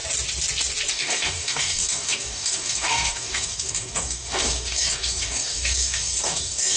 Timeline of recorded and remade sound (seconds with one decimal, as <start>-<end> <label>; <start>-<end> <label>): 0.0-0.9 recorded; 0.9-6.8 remade